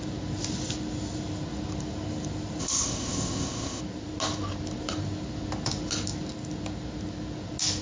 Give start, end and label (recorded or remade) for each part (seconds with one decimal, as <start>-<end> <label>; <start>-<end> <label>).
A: 0.0-2.6 recorded; 2.6-3.8 remade; 3.8-7.8 recorded